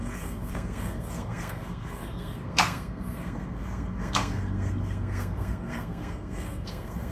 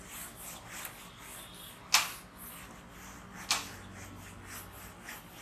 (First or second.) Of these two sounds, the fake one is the first